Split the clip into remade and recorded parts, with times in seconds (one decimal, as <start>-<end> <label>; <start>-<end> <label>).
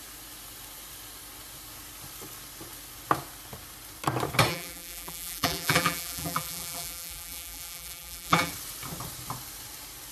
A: 0.0-4.5 recorded; 4.5-8.5 remade; 8.5-10.1 recorded